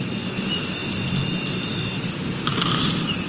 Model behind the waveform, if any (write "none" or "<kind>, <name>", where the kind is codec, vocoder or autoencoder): none